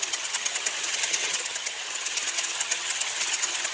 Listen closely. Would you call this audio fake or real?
fake